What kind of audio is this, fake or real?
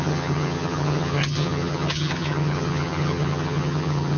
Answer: fake